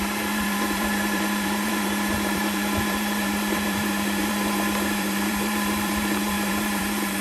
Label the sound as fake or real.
fake